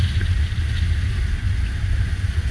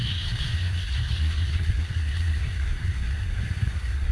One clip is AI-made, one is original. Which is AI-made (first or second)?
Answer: second